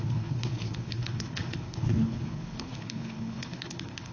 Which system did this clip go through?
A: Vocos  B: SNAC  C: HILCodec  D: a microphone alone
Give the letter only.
C